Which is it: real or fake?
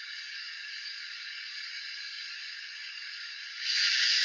fake